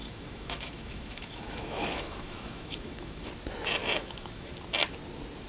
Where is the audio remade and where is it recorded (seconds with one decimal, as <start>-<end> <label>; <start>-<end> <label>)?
0.0-3.3 remade; 3.3-3.8 recorded; 3.8-4.5 remade; 4.5-5.5 recorded